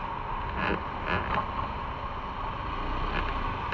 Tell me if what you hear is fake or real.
real